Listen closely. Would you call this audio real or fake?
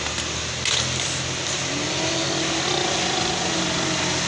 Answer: real